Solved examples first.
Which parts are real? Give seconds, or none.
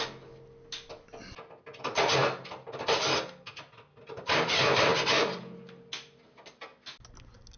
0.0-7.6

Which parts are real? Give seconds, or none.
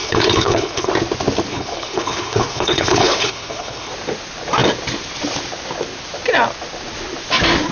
0.9-1.5; 3.9-7.7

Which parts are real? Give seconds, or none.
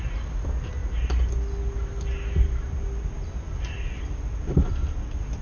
0.0-5.4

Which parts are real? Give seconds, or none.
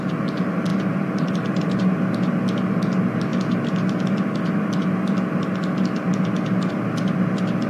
0.0-0.7; 1.6-7.7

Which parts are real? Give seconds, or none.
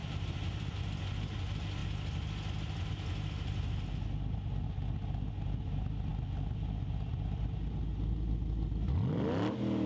1.0-9.9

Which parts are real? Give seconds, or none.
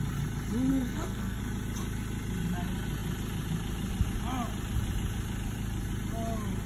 0.0-0.7; 1.4-6.7